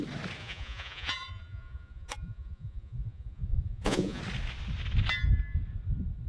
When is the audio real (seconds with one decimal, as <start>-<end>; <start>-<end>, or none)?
0.0-0.4; 4.2-6.3